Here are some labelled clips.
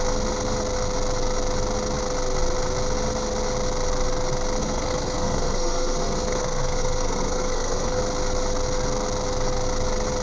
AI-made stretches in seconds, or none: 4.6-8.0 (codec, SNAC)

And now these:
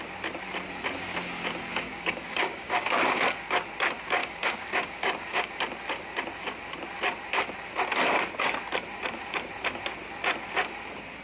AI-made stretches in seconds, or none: 1.7-3.1 (codec, DAC); 4.2-5.6